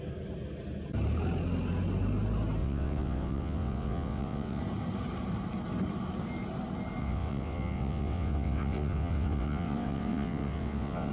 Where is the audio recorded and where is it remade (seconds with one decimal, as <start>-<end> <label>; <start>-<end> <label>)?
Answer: 0.0-2.6 recorded; 2.6-4.6 remade; 4.6-7.0 recorded; 7.0-11.1 remade